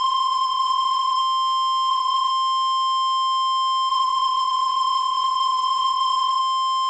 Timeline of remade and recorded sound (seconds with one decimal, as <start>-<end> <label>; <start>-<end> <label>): 0.0-1.2 remade; 1.2-1.9 recorded; 1.9-2.3 remade; 2.3-3.9 recorded; 3.9-6.4 remade; 6.4-6.9 recorded